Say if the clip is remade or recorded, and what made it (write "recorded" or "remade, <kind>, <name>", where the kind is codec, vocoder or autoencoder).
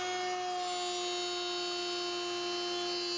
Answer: recorded